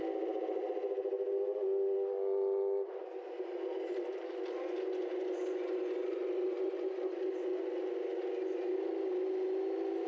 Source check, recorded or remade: recorded